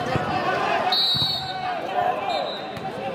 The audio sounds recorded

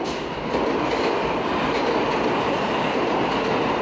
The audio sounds recorded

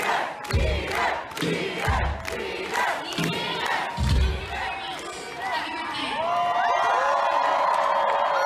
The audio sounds recorded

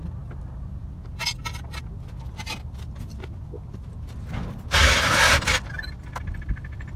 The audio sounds recorded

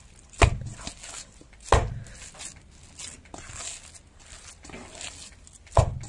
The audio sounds recorded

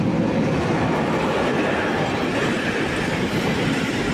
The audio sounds recorded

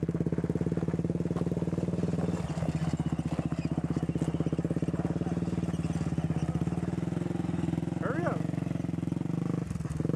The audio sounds recorded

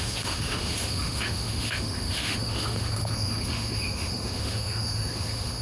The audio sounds remade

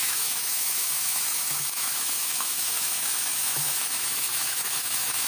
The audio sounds remade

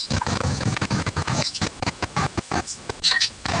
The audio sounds remade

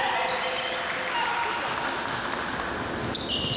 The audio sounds recorded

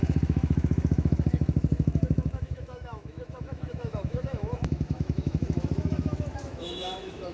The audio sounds remade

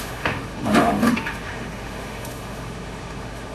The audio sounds remade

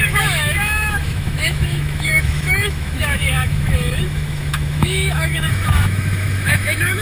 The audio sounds remade